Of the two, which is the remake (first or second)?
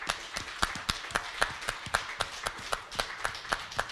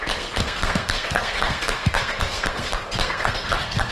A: second